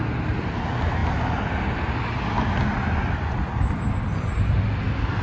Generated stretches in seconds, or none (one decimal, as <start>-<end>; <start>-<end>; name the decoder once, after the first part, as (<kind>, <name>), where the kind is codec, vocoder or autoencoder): none